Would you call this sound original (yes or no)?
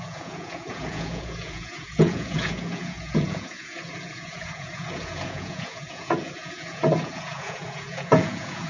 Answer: no